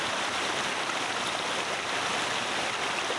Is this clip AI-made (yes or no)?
no